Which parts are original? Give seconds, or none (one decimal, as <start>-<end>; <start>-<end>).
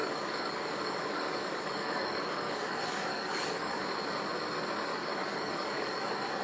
3.8-4.9